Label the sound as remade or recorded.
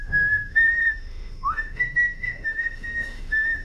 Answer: remade